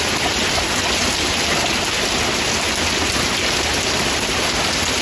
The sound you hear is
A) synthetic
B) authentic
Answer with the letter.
B